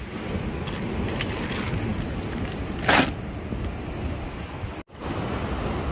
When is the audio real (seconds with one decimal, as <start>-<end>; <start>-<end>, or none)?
0.0-5.9